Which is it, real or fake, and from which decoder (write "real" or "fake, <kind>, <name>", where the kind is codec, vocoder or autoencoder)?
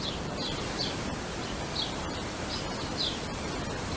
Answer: real